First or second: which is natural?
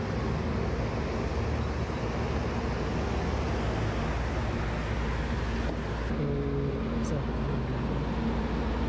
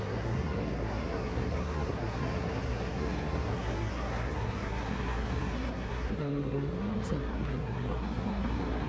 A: first